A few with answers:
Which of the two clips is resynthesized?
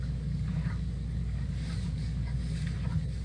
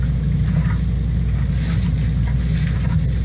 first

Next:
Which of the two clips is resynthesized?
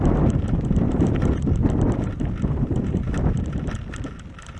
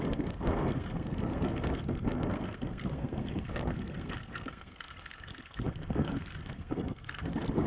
second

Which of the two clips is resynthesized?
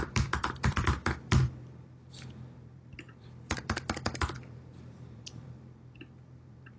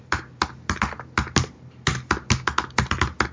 first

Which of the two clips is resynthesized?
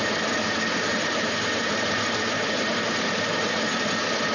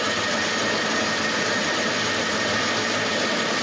first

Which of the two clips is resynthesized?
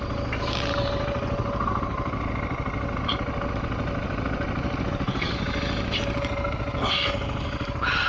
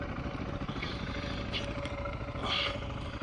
second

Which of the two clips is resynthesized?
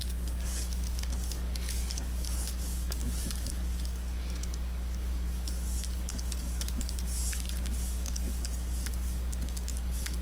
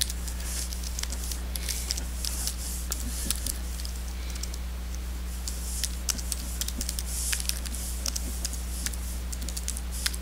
first